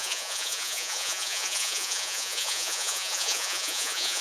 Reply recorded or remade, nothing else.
remade